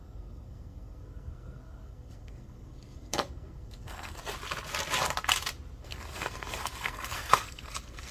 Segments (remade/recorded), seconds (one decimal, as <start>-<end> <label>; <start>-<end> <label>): 0.0-4.2 remade; 4.2-5.8 recorded; 5.8-8.1 remade